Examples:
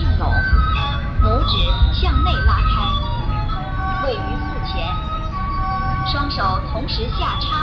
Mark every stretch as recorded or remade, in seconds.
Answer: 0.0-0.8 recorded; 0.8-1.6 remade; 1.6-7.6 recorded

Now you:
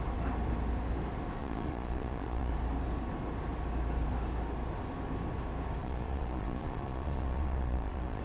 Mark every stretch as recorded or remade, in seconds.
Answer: 0.0-1.4 recorded; 1.4-2.5 remade; 2.5-5.8 recorded; 5.8-8.2 remade